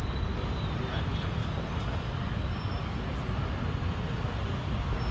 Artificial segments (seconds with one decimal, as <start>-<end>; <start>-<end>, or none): none